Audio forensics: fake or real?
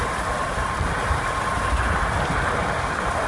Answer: real